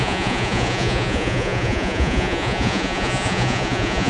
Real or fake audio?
fake